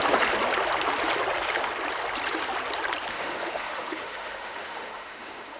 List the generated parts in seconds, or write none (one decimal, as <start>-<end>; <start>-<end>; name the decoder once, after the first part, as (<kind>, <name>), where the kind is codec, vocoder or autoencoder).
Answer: 3.1-5.6 (autoencoder, DAC-VAE)

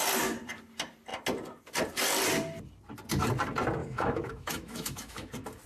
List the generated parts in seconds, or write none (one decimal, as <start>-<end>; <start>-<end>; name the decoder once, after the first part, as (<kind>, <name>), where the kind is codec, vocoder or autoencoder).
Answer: 3.8-5.3 (autoencoder, DAC-VAE)

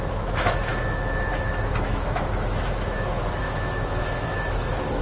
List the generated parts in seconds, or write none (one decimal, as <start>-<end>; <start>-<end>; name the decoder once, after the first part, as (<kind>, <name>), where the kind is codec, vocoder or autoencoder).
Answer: 0.0-5.0 (autoencoder, DAC-VAE)